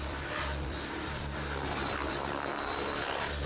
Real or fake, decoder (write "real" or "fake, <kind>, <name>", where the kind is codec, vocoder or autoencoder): fake, vocoder, BigVGAN v2